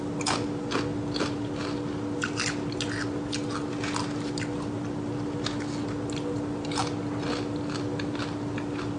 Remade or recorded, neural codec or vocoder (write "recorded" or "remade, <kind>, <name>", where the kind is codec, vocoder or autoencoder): recorded